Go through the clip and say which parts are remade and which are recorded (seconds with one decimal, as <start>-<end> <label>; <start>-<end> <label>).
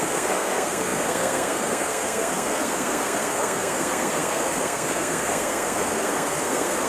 0.0-6.9 remade